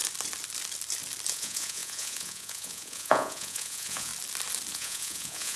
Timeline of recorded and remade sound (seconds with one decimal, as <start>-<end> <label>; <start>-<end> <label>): 0.0-1.3 recorded; 1.3-4.1 remade; 4.1-4.7 recorded; 4.7-5.6 remade

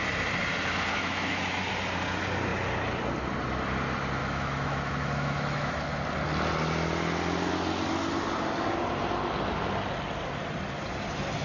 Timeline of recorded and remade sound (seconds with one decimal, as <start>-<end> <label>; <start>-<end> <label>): 0.0-0.9 recorded; 0.9-1.7 remade; 1.7-4.2 recorded; 4.2-5.7 remade; 5.7-11.4 recorded

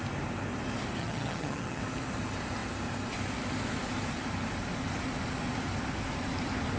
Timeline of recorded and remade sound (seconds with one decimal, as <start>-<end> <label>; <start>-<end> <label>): 0.0-1.0 recorded; 1.0-1.8 remade; 1.8-6.8 recorded

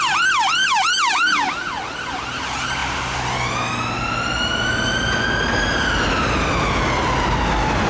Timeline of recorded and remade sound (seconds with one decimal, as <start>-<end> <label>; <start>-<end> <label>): 0.0-7.9 recorded

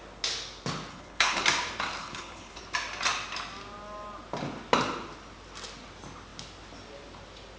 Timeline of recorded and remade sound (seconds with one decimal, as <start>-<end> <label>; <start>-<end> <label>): 0.0-0.9 recorded; 0.9-1.4 remade; 1.4-2.0 recorded; 2.0-2.6 remade; 2.6-7.6 recorded